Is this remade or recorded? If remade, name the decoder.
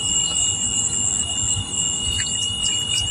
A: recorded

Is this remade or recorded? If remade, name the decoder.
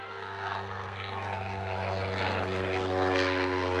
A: remade, codec, SNAC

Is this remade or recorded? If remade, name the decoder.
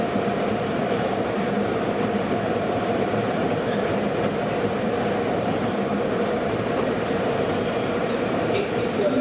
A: remade, vocoder, BigVGAN v2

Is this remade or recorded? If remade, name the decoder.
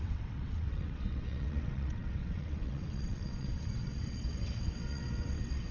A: remade, vocoder, WaveNeXt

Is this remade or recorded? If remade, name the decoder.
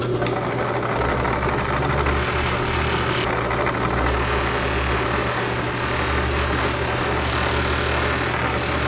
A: recorded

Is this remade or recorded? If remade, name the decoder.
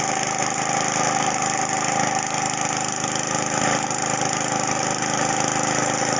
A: recorded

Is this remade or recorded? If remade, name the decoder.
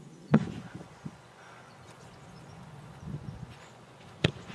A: remade, vocoder, Vocos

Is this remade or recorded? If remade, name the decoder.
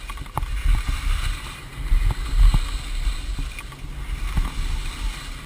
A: recorded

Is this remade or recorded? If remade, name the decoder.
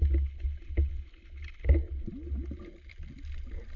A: recorded